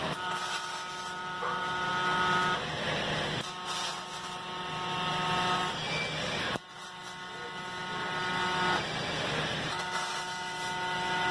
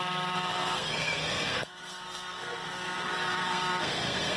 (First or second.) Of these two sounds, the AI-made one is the second